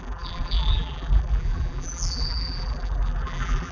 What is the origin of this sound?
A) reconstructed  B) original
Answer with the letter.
A